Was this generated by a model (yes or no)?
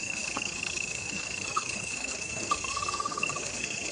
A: yes